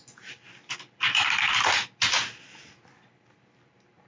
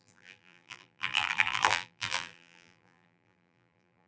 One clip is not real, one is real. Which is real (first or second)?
first